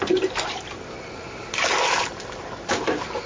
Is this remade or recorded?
recorded